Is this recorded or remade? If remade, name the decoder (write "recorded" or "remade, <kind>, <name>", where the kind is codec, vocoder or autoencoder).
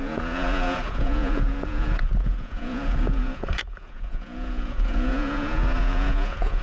remade, vocoder, Vocos